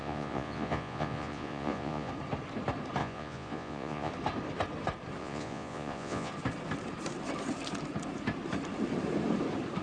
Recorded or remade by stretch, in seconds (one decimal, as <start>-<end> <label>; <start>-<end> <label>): 0.0-2.1 remade; 2.1-3.0 recorded; 3.0-4.1 remade; 4.1-5.2 recorded; 5.2-6.3 remade; 6.3-9.8 recorded